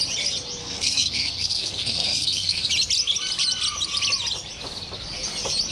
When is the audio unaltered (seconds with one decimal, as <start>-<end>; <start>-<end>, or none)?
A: 0.0-0.6; 2.7-5.7